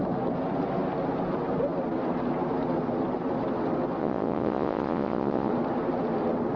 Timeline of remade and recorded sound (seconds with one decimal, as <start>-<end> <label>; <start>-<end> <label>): 0.0-4.0 recorded; 4.0-5.5 remade; 5.5-6.6 recorded